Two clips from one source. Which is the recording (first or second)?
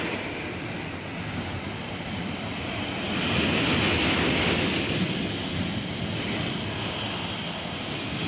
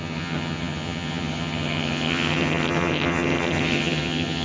first